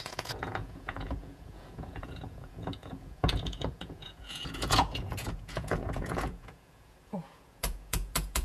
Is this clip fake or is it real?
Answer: fake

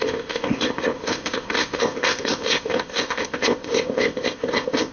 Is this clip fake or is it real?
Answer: fake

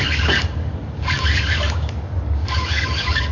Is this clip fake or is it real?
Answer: fake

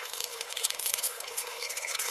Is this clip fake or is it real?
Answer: fake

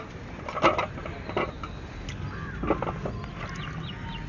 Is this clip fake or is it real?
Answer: real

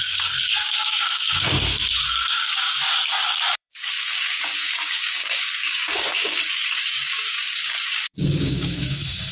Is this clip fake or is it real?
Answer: fake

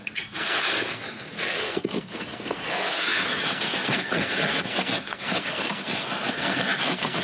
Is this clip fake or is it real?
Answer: fake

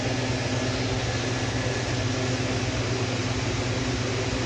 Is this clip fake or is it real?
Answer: real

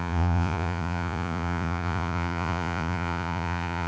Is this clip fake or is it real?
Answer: fake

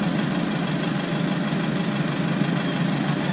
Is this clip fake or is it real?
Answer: real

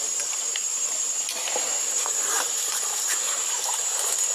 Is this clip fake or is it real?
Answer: real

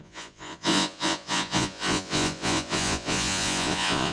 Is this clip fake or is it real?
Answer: fake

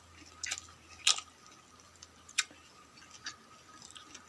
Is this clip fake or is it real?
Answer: real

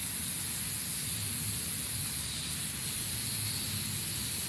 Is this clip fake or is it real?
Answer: real